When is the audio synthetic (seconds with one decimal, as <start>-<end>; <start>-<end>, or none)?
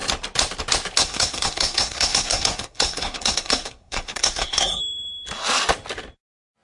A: 1.0-4.8